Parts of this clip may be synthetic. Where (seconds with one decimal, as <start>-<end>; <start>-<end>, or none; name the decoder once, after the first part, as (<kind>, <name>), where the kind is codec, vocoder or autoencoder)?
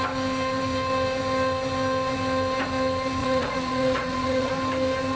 3.2-4.5 (vocoder, Vocos)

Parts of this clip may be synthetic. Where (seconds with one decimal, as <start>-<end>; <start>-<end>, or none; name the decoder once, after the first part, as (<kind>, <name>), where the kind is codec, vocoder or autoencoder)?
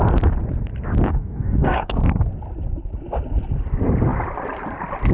1.1-1.9 (codec, DAC)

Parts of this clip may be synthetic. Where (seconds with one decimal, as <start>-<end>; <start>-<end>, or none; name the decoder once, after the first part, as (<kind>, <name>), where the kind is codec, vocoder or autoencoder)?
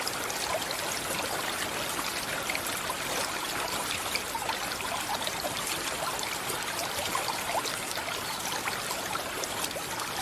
none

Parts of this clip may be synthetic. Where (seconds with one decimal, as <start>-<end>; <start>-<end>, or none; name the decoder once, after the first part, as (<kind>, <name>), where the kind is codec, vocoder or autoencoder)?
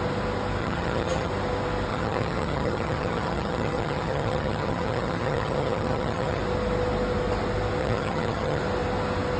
0.6-1.3 (vocoder, HiFi-GAN); 1.9-6.4; 7.8-8.6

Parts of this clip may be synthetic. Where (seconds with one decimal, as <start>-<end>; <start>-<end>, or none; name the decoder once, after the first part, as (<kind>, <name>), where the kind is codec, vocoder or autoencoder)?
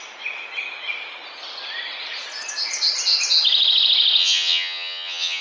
4.2-5.4 (vocoder, HiFi-GAN)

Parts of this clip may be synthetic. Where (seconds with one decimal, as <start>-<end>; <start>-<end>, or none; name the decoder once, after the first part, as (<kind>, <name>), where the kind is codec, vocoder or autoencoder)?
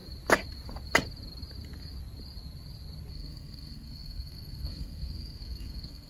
3.1-6.1 (codec, SNAC)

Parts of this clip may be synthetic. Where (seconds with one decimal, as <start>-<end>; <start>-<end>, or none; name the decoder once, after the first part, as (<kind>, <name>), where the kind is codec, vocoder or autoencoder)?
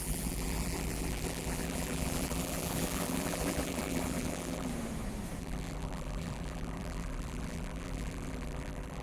0.0-4.7 (vocoder, BigVGAN v2); 5.4-9.0